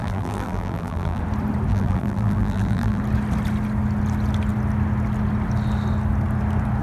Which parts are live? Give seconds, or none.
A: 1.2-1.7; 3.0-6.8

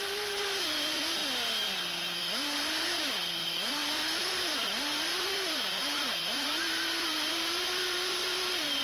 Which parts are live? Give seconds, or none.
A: 1.2-2.2

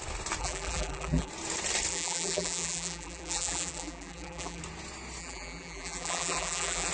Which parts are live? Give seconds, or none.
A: 0.0-0.4; 1.3-1.9; 4.6-5.2

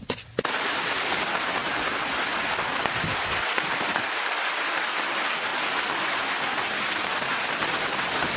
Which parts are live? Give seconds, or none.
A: 0.0-8.4

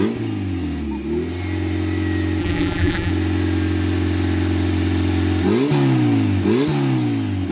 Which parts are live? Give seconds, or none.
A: 0.0-2.4; 3.1-7.5

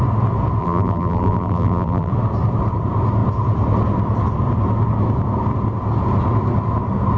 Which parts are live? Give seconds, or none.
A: 0.0-0.6; 2.1-7.2